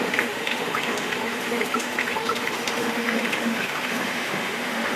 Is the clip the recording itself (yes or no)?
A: no